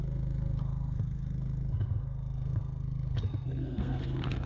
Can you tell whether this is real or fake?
fake